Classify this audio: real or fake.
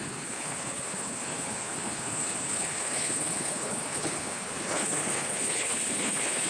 fake